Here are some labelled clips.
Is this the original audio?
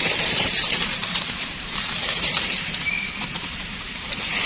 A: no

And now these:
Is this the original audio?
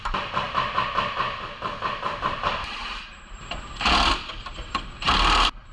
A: no